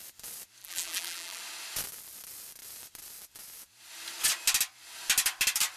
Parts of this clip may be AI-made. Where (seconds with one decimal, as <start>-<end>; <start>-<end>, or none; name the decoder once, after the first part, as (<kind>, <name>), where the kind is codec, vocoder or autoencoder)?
0.6-1.4 (vocoder, BigVGAN v2)